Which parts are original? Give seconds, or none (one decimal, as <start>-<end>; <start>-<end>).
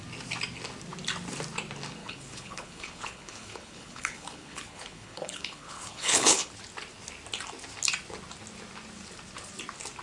0.0-2.0; 6.5-10.0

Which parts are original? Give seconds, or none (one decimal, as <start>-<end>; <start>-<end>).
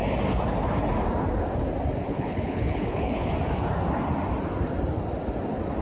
0.0-2.0; 3.3-5.8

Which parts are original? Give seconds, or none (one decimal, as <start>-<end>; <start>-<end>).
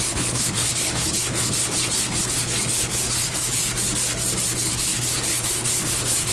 3.7-4.5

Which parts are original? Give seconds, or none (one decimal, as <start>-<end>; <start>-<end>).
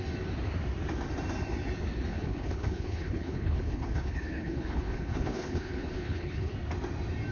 0.0-2.1; 6.5-7.3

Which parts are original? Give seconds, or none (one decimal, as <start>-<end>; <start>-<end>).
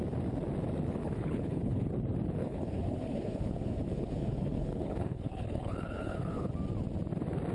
0.0-1.0; 1.9-2.4; 6.5-7.5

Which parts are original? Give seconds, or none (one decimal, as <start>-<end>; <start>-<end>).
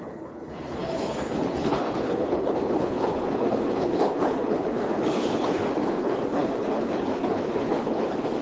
none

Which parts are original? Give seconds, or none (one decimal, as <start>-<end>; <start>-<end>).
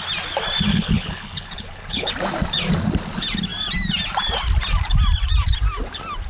0.0-0.7; 2.1-6.3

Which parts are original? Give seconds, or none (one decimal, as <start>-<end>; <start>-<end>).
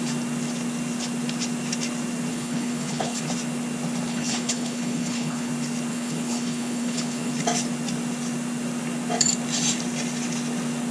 0.0-2.3; 3.2-4.1; 5.5-5.9; 7.3-10.9